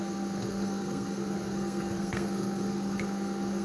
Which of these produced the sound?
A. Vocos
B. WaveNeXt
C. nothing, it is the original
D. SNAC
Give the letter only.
D